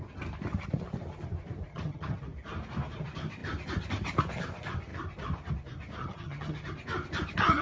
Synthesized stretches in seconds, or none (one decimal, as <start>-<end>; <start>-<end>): 1.7-2.2; 6.0-6.7